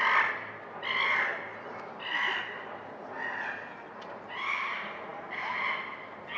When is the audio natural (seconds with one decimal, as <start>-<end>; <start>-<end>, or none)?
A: 0.0-6.4

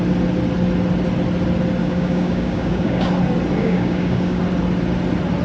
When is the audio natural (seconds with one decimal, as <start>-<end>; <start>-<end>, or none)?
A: 0.0-1.8; 3.1-3.6; 4.4-5.4

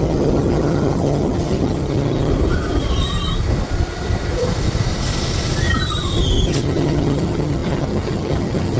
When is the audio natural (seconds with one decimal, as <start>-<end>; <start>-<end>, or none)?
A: 2.3-6.5

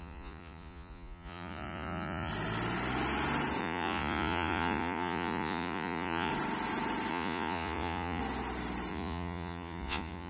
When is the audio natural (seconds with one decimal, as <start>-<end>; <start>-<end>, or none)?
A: 2.3-3.6; 6.3-7.1; 8.2-8.9

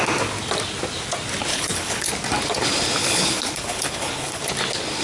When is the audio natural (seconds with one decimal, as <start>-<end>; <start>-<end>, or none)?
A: 0.0-1.5; 2.1-3.0; 4.4-5.0

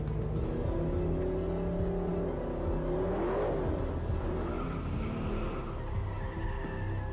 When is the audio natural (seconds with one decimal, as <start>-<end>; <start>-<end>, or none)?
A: 0.0-7.1

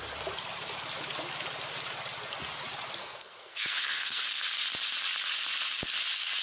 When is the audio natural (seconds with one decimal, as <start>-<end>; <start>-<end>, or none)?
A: 0.0-3.0; 4.2-6.4